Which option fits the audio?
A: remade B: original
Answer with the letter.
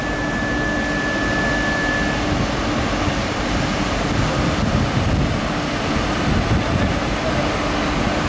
B